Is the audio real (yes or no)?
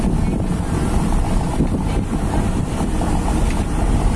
yes